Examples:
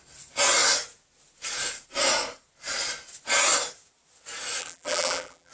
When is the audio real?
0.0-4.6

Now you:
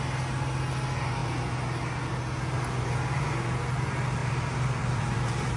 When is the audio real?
0.0-4.2

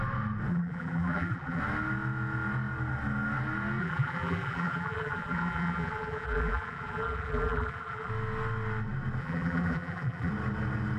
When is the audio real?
0.0-0.5; 1.6-3.8; 8.1-9.2; 10.3-11.0

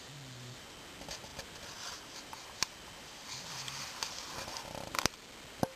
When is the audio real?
0.0-5.8